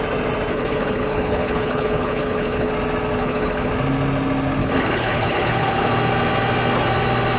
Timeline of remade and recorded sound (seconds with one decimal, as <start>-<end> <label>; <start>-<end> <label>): 0.0-0.5 recorded; 0.5-2.7 remade; 2.7-3.2 recorded; 3.2-3.7 remade; 3.7-4.6 recorded; 4.6-5.9 remade; 5.9-7.4 recorded